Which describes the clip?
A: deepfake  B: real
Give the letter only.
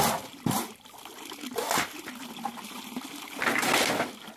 B